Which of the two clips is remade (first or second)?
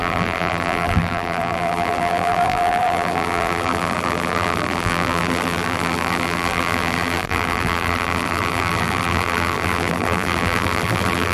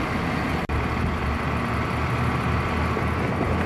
first